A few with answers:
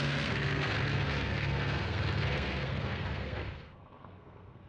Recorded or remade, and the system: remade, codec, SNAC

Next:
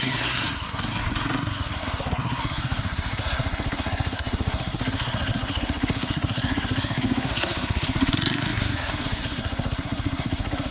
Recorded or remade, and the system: remade, codec, SNAC